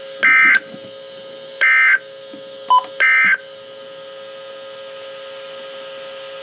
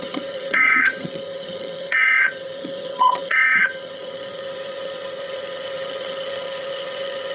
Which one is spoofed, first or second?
second